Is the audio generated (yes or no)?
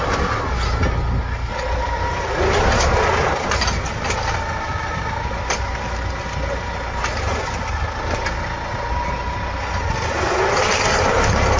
no